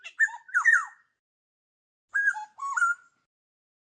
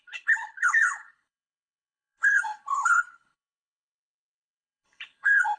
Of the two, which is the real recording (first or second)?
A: first